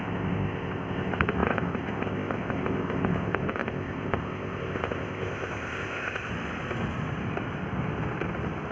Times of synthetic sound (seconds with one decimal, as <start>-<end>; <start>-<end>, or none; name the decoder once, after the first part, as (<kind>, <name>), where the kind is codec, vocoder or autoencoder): 0.0-6.3 (codec, ZipCodec)